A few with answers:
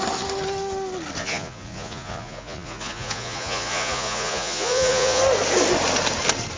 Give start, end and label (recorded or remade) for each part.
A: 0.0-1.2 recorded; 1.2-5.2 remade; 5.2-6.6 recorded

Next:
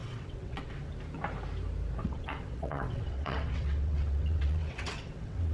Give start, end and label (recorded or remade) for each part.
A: 0.0-0.8 remade; 0.8-2.0 recorded; 2.0-5.5 remade

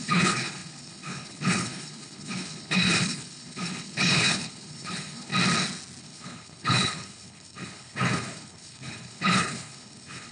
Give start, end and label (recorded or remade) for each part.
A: 0.0-5.3 remade; 5.3-6.0 recorded; 6.0-10.3 remade

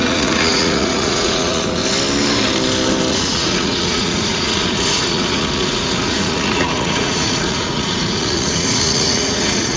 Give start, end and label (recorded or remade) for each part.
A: 0.0-1.8 remade; 1.8-3.1 recorded; 3.1-9.8 remade

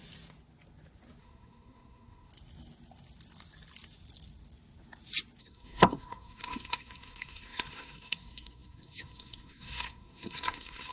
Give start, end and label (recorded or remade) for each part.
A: 0.0-1.2 recorded; 1.2-2.3 remade; 2.3-5.4 recorded; 5.4-10.9 remade

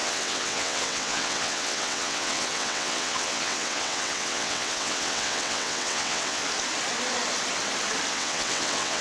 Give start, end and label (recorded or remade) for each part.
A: 0.0-6.4 remade; 6.4-8.1 recorded; 8.1-9.0 remade

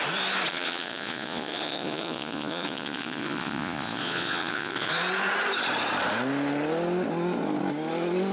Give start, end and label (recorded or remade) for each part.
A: 0.0-0.5 recorded; 0.5-4.9 remade; 4.9-8.3 recorded

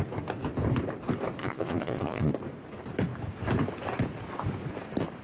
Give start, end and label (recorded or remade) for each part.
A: 0.0-1.4 recorded; 1.4-2.3 remade; 2.3-5.2 recorded